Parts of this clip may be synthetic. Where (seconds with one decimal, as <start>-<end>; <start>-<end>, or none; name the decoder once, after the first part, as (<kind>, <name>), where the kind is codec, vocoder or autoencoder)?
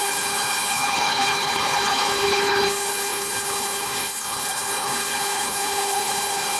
0.0-6.6 (codec, HILCodec)